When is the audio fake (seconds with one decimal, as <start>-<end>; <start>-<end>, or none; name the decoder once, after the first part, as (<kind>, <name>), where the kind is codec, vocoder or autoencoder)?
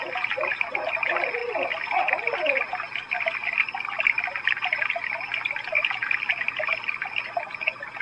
3.4-6.6 (vocoder, BigVGAN v2)